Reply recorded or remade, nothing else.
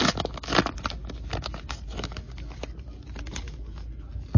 recorded